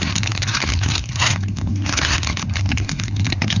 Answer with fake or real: fake